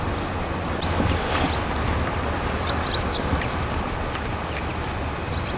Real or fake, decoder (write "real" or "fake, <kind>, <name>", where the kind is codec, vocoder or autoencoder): real